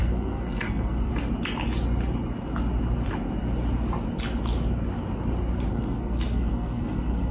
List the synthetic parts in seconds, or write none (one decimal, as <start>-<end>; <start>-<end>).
0.0-1.1; 5.7-7.3